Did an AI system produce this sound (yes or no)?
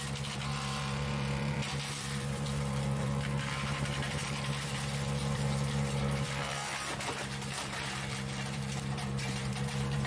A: yes